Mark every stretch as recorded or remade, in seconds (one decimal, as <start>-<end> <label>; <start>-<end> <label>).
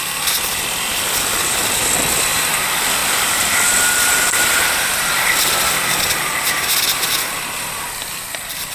0.0-3.0 recorded; 3.0-7.0 remade; 7.0-8.7 recorded